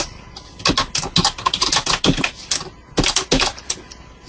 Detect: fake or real real